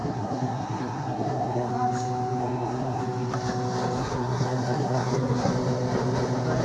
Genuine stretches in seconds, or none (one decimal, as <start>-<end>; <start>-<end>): 1.7-2.4; 3.0-4.0; 5.5-6.6

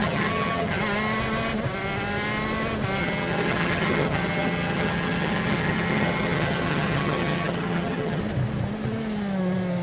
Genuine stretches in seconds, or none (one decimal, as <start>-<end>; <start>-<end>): 0.8-3.0; 8.2-9.8

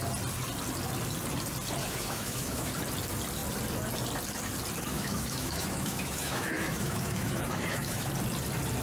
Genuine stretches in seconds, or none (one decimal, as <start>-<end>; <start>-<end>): 0.0-1.8; 2.7-4.9; 8.1-8.8

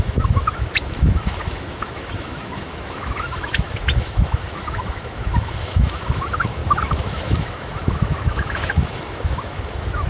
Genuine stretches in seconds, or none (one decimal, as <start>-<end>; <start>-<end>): none

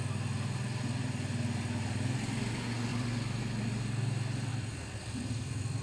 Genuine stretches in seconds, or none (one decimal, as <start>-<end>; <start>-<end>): 0.0-2.9; 3.4-4.5

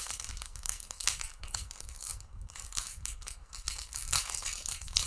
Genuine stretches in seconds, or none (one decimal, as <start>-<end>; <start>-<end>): none